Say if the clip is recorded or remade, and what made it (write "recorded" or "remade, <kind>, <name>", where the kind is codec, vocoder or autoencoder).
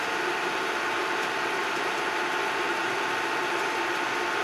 remade, vocoder, BigVGAN v2